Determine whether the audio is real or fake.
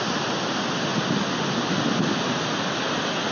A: real